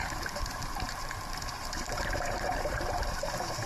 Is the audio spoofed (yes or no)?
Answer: yes